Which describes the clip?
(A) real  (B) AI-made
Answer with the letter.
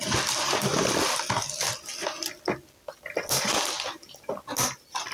A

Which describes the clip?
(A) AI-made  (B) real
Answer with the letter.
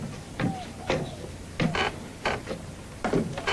A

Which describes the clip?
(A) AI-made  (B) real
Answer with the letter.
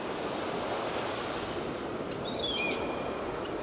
B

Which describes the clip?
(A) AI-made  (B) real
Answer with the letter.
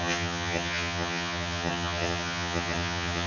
A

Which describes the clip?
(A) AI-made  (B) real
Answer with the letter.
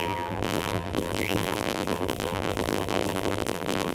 A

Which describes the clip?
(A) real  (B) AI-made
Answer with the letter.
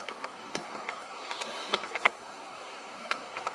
B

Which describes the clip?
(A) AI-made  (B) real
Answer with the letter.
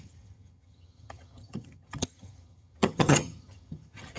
A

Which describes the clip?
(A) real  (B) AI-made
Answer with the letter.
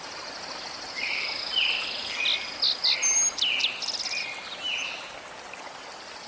A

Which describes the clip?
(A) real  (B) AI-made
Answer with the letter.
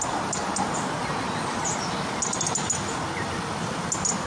A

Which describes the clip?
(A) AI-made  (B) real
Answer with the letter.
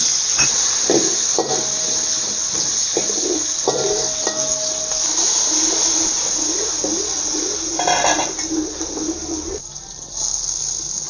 B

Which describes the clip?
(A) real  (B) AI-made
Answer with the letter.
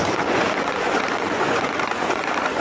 B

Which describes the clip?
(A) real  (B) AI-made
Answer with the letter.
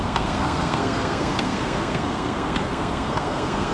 B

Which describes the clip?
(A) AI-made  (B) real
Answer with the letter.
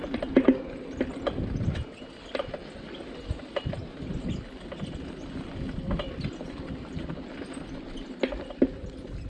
B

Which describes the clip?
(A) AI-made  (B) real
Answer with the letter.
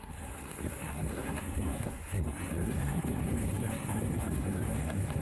A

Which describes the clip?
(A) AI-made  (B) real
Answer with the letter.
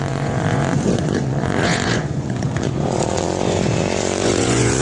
A